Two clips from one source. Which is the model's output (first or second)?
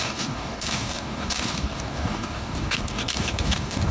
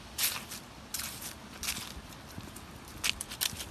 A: first